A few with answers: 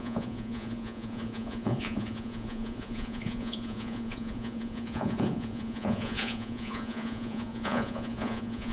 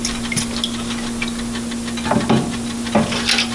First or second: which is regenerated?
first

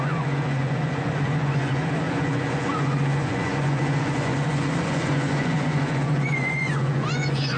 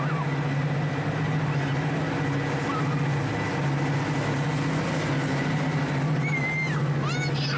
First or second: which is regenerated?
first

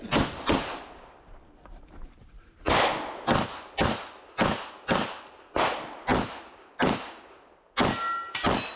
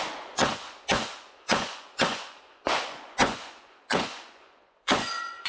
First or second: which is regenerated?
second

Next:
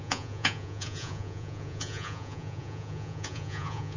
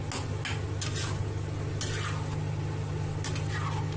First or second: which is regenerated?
first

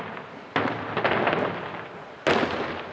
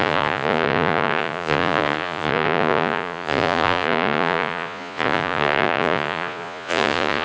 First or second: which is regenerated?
second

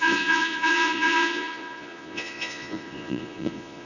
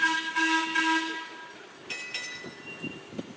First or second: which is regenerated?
first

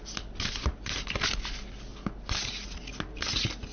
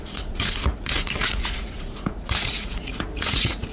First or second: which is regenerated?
second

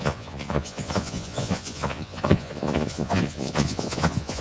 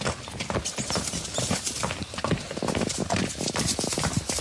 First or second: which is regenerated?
first